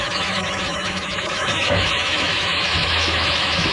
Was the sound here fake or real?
fake